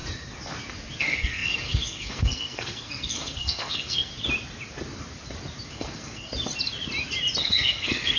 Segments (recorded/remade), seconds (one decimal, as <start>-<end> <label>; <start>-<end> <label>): 0.0-1.0 recorded; 1.0-4.1 remade; 4.1-5.7 recorded; 5.7-6.3 remade; 6.3-7.4 recorded; 7.4-8.2 remade